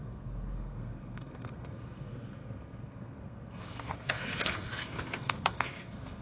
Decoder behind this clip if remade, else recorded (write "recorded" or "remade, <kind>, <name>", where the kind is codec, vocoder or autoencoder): remade, codec, SNAC